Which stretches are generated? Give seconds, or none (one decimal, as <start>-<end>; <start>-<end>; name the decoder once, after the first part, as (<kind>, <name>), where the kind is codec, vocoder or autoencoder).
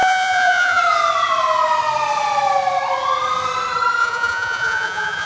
0.0-0.8 (vocoder, Vocos); 4.0-5.3